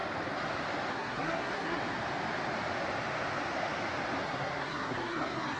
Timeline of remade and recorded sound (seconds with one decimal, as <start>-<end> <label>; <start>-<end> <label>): 0.0-0.9 recorded; 0.9-1.8 remade; 1.8-4.2 recorded; 4.2-5.6 remade